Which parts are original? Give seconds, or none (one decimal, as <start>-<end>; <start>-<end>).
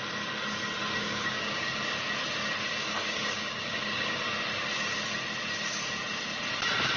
0.0-1.0; 1.8-2.7; 4.2-7.0